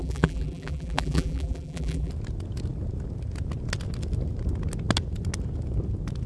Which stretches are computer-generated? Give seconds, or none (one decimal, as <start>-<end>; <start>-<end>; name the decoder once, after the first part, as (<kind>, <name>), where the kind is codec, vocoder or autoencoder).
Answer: 0.0-2.1 (vocoder, BigVGAN v2)